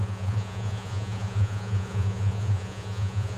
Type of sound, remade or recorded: remade